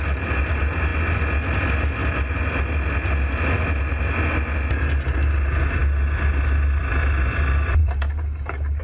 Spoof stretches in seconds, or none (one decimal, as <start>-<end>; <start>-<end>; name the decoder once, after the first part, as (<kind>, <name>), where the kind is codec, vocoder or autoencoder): 7.8-8.8 (vocoder, BigVGAN v2)